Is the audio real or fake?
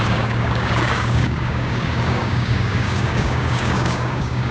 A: fake